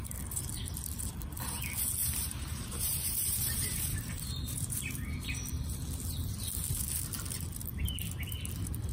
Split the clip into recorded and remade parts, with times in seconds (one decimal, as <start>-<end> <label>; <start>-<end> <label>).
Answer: 0.0-2.0 recorded; 2.0-5.3 remade; 5.3-8.9 recorded